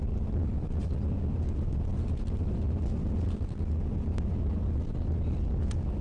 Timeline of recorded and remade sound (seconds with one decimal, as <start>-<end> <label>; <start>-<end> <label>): 0.0-6.0 recorded